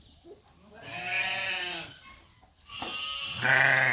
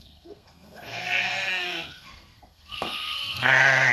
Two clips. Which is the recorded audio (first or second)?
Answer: first